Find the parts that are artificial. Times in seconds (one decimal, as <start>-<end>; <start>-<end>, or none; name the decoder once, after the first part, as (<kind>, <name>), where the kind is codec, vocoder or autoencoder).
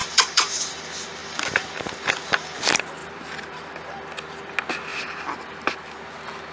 0.0-0.5 (vocoder, BigVGAN v2); 1.2-1.8; 3.0-3.8; 4.9-6.0